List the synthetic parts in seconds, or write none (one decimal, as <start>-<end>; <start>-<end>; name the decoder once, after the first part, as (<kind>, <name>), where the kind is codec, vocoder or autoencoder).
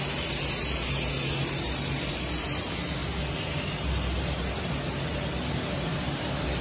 none